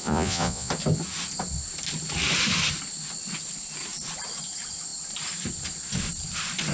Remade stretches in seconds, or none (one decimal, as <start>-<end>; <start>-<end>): 0.0-0.7